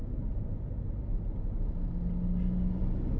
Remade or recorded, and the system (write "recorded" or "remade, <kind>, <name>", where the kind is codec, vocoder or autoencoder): recorded